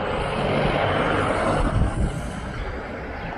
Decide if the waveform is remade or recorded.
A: recorded